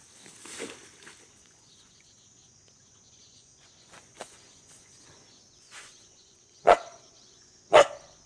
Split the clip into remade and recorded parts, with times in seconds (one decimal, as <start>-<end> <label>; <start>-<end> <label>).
0.0-1.3 recorded; 1.3-8.3 remade